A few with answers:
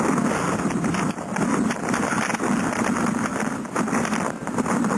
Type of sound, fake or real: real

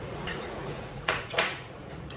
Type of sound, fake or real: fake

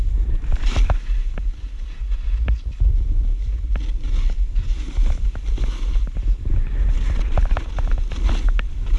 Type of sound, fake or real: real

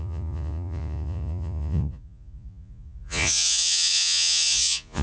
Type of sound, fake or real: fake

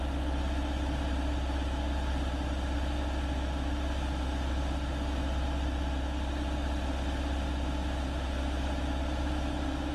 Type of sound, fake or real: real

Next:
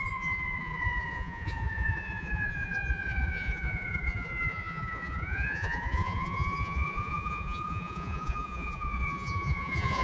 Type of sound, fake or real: fake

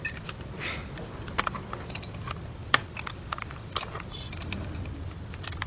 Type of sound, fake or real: fake